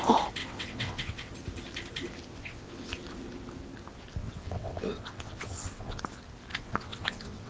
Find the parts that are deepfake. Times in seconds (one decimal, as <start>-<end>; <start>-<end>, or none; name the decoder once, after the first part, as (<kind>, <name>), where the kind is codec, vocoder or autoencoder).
0.4-1.3 (vocoder, WaveNeXt); 2.3-2.9; 4.2-6.0; 6.5-7.5